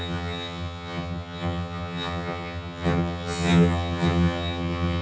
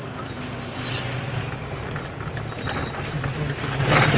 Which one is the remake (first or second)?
first